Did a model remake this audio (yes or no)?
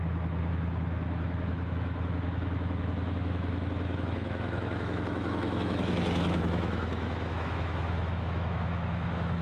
yes